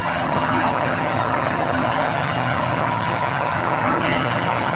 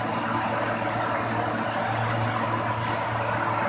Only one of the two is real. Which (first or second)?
second